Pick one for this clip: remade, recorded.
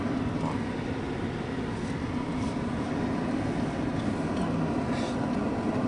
recorded